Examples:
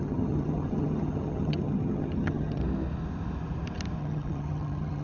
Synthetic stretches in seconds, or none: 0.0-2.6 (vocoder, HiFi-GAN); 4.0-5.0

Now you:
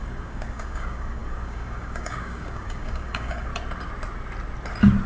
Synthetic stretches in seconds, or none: 0.0-3.5 (codec, DAC)

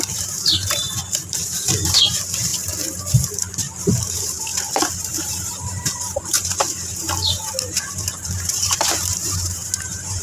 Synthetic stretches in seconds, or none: 0.0-2.5 (vocoder, BigVGAN v2); 3.9-4.5; 5.2-10.2

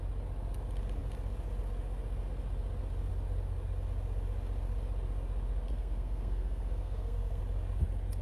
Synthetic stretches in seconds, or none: 5.7-7.4 (codec, SNAC)

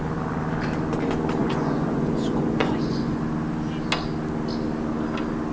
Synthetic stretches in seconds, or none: 1.4-3.2 (vocoder, Vocos)

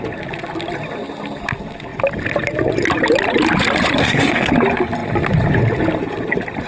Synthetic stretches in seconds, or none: 4.0-4.5 (codec, SNAC)

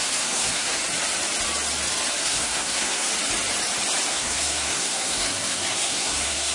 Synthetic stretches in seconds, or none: 0.0-0.8 (codec, SNAC); 2.2-3.1; 4.1-6.5